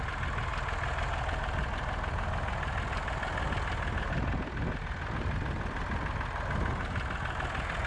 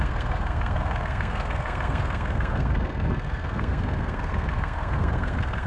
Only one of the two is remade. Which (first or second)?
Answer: second